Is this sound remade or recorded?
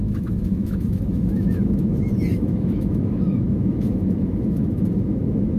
remade